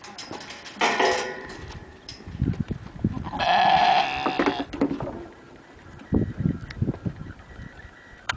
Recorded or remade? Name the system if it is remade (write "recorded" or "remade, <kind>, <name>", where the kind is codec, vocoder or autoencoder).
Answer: remade, vocoder, BigVGAN v2